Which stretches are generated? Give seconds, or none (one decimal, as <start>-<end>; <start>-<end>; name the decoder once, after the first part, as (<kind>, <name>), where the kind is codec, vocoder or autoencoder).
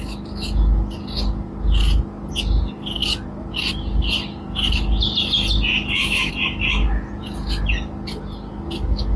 5.7-6.3 (autoencoder, DAC-VAE)